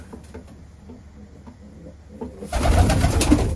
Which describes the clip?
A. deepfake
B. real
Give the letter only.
B